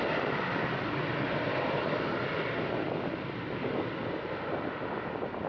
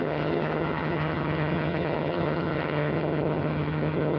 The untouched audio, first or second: first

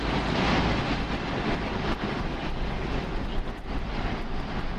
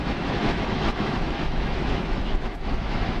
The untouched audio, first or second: first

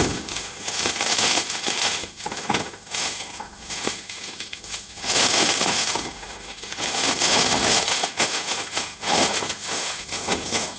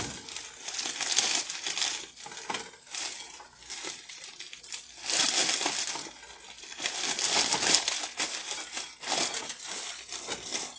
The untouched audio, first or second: second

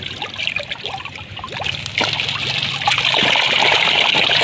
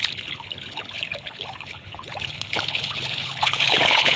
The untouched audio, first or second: first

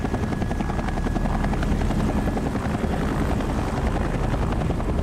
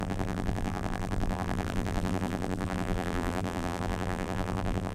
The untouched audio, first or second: first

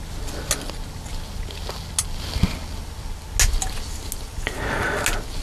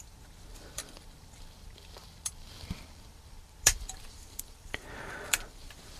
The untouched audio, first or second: first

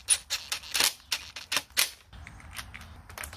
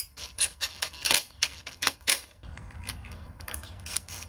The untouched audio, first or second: first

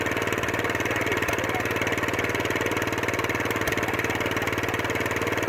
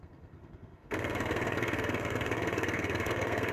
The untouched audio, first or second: first